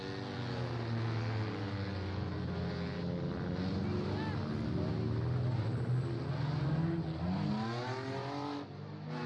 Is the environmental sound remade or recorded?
recorded